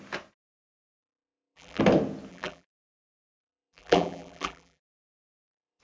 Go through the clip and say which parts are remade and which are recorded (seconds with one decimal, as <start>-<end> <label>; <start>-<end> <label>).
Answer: 0.0-1.0 recorded; 1.0-1.8 remade; 1.8-2.3 recorded; 2.3-5.8 remade